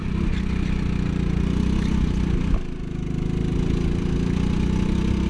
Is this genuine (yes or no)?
yes